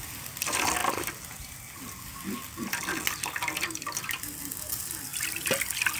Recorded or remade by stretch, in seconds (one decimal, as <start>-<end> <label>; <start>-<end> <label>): 0.0-6.0 recorded